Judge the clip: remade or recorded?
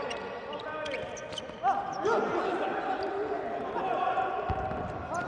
recorded